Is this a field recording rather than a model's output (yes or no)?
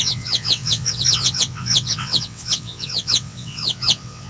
no